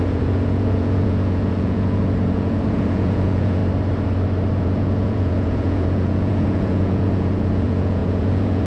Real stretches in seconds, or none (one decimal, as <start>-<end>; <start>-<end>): 3.6-4.6